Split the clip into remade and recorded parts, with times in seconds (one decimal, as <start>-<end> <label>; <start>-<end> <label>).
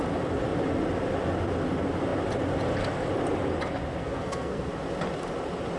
0.0-4.0 recorded; 4.0-4.7 remade; 4.7-5.8 recorded